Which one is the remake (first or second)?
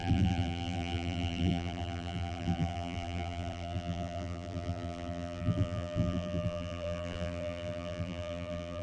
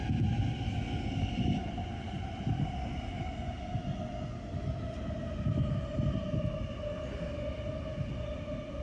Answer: first